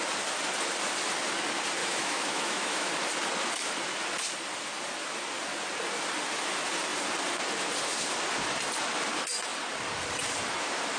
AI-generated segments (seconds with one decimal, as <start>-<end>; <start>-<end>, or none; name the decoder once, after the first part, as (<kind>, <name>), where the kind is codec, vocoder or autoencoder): 1.8-2.9 (autoencoder, DAC-VAE)